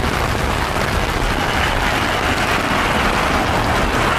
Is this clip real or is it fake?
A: real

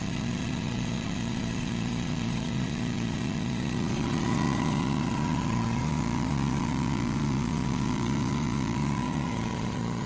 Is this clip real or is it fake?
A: fake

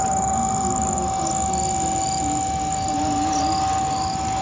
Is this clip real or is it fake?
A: real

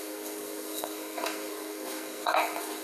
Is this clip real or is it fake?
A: fake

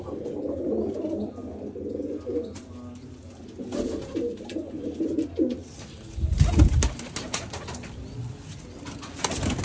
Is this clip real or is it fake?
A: real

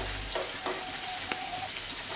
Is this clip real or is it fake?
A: real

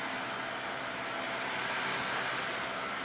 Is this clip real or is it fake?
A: real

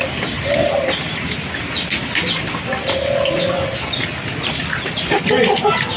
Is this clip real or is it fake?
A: real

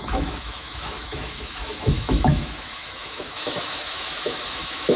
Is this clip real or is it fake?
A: fake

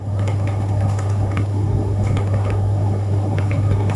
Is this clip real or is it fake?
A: fake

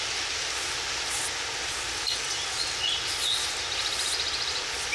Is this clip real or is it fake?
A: real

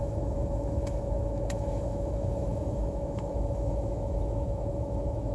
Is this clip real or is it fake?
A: fake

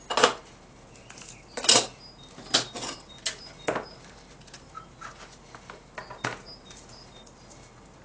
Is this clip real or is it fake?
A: real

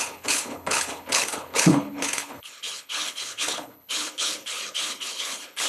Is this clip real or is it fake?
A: fake